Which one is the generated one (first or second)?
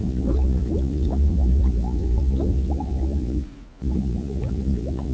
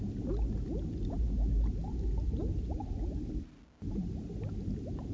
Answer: first